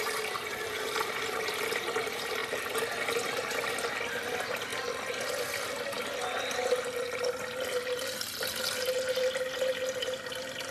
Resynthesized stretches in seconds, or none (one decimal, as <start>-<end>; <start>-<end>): 0.0-2.4; 3.7-4.7; 7.7-10.7